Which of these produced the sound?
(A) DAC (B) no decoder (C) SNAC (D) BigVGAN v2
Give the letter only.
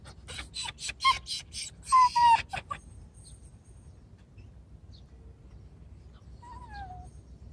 B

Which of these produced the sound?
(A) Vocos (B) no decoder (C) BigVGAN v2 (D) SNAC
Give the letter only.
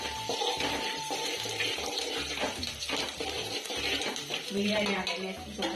C